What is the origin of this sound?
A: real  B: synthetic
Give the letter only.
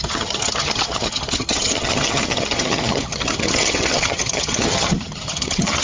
B